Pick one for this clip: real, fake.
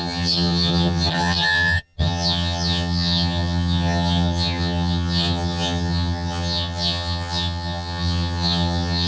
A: fake